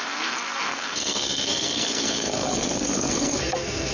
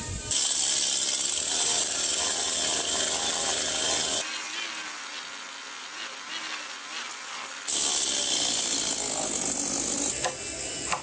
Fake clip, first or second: first